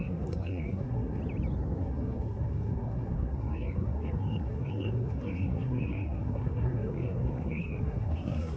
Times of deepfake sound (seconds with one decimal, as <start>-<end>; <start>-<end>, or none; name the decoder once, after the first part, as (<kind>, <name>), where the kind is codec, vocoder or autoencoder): 0.0-1.2 (codec, SNAC); 1.8-8.6